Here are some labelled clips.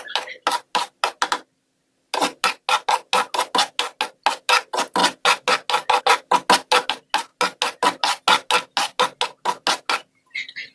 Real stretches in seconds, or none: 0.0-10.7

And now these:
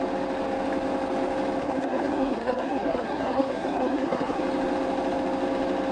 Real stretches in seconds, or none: 0.0-1.6; 4.4-5.9

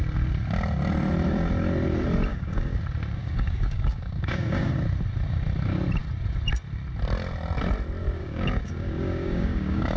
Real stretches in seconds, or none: 0.0-2.3; 2.8-3.2; 4.7-8.2

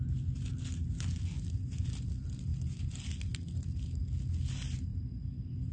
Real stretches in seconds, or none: 0.0-5.7

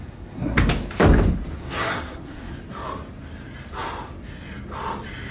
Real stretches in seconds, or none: 0.6-1.6; 2.5-5.3

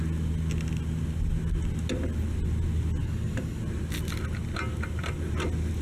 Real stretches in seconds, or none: 0.0-3.0; 3.6-5.8

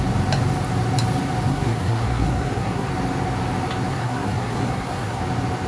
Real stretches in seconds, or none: 0.0-1.5; 2.9-3.9; 5.2-5.7

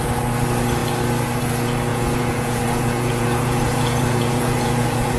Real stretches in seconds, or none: 0.0-1.9